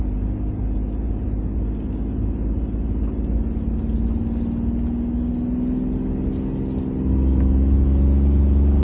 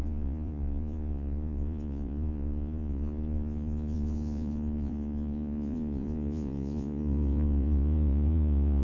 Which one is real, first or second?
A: first